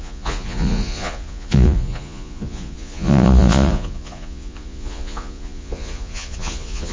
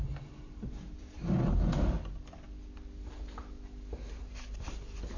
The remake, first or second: first